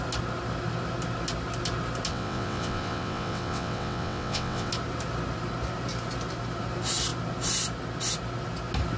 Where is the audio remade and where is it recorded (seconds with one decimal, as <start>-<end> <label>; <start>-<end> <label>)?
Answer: 0.0-2.1 recorded; 2.1-4.7 remade; 4.7-9.0 recorded